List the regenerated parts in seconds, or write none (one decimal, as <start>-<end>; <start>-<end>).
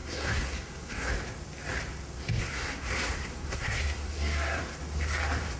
0.0-1.1; 2.4-4.6